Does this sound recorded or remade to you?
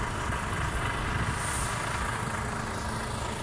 recorded